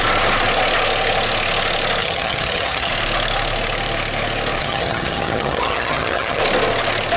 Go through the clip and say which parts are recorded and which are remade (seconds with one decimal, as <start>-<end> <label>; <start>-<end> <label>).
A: 0.0-2.0 recorded; 2.0-2.9 remade; 2.9-4.6 recorded; 4.6-6.4 remade; 6.4-7.2 recorded